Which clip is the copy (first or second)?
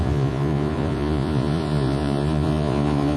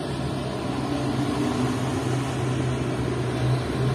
first